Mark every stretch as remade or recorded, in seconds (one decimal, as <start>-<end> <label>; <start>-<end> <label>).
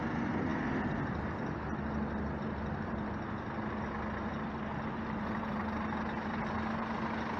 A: 0.0-7.4 recorded